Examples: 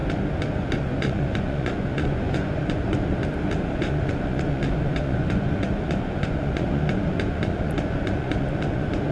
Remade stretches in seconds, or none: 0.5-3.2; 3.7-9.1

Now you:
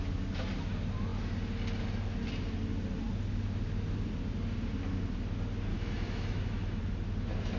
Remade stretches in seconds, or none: 5.7-6.8

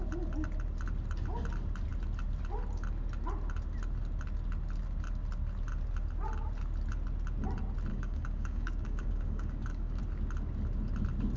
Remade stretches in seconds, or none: 7.9-10.0

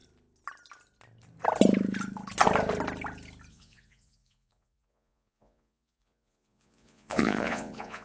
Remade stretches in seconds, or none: 3.5-8.0

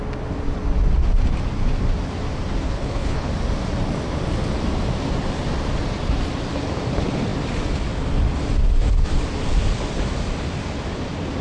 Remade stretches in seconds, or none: 2.6-3.3

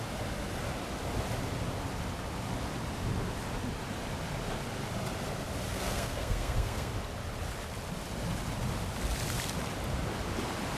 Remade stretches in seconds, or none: 5.7-6.9

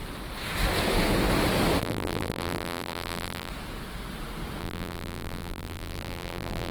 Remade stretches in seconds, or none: 1.8-3.5; 4.6-6.7

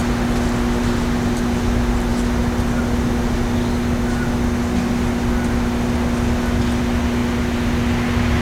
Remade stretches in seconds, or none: none